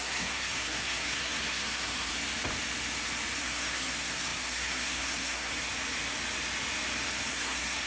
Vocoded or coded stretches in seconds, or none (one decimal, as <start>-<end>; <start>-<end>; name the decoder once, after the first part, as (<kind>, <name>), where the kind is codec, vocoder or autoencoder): 0.0-2.1 (codec, SNAC); 3.4-5.5; 7.3-7.9